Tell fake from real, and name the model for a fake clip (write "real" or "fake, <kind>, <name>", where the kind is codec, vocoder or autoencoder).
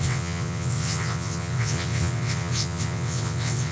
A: fake, vocoder, WaveNeXt